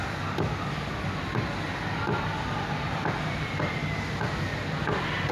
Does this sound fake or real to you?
real